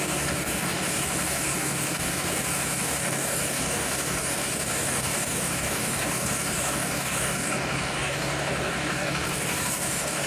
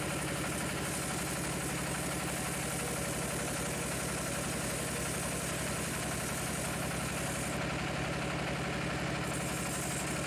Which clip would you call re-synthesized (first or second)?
first